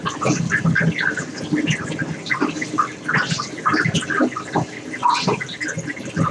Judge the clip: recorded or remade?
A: recorded